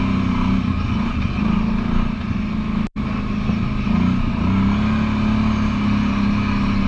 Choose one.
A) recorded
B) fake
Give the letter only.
A